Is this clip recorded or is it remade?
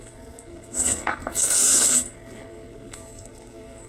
remade